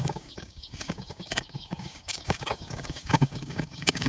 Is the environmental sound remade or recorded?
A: remade